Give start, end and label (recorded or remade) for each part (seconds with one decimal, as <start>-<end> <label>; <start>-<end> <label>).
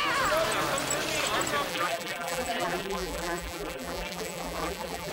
0.0-1.7 recorded; 1.7-5.1 remade